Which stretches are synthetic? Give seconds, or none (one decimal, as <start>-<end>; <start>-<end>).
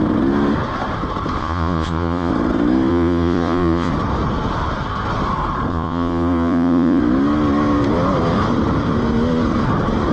1.4-2.3; 2.9-3.9; 5.7-7.0